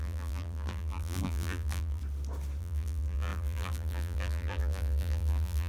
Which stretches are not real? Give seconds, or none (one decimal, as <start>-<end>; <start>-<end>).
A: 0.0-2.0; 2.6-5.7